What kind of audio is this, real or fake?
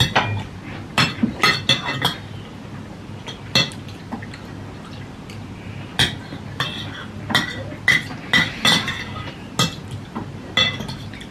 real